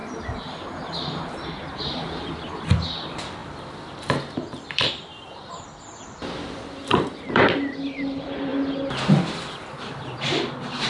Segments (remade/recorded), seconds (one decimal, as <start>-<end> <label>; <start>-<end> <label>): 0.0-2.3 recorded; 2.3-8.5 remade; 8.5-10.0 recorded; 10.0-10.9 remade